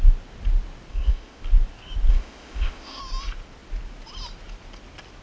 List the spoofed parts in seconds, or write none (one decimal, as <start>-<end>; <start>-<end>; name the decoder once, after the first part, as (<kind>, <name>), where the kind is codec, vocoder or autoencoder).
0.9-1.4 (codec, ZipCodec); 2.1-3.0